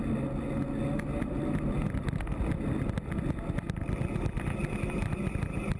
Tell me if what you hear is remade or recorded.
recorded